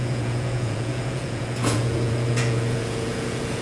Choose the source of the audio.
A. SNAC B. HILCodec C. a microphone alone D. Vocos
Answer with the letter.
D